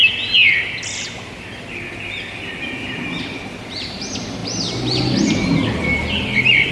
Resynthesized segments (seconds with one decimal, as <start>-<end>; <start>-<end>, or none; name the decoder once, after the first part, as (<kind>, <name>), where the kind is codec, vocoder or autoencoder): none